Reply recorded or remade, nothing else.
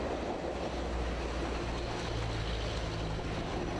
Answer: recorded